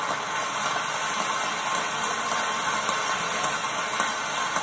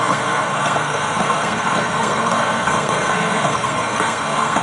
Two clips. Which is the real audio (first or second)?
first